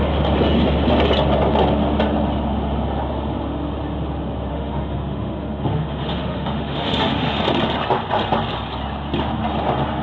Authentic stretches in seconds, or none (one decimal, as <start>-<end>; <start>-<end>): 0.0-4.5; 7.4-10.0